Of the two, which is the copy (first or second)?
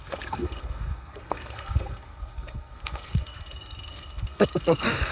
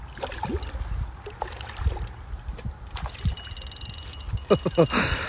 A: first